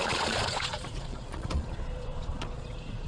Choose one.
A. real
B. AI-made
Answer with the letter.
B